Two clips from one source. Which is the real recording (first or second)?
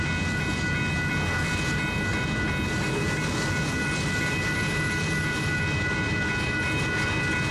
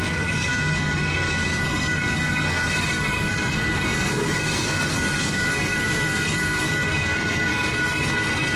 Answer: first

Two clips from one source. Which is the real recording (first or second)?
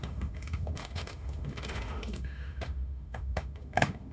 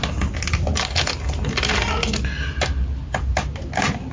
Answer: second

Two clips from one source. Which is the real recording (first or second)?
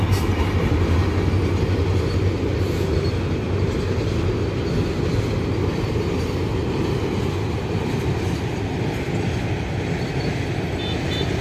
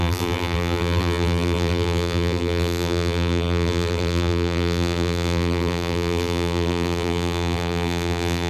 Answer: first